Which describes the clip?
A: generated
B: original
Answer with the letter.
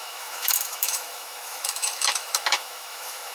A